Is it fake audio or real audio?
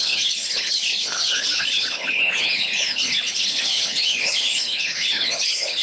fake